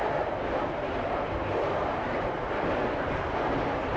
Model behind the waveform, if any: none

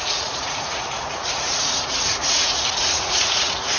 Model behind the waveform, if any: vocoder, Vocos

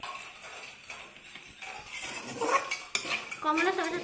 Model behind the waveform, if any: none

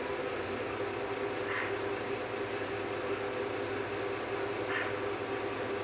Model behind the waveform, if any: none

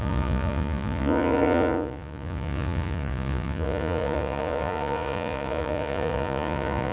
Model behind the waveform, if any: vocoder, Vocos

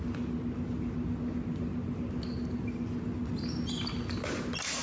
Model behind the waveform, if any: none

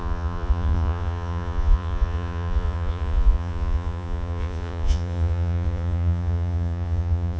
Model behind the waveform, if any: vocoder, Vocos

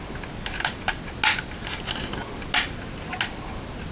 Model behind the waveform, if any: none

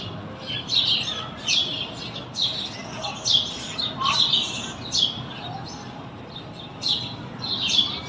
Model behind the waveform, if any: none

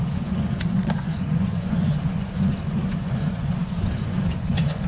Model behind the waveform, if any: vocoder, Vocos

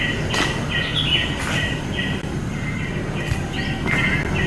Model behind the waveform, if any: none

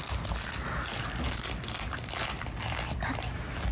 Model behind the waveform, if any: none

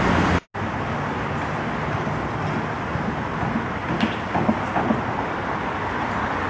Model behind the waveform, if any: none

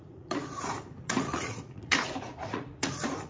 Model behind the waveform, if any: vocoder, Vocos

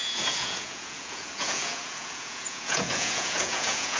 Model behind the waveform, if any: vocoder, Vocos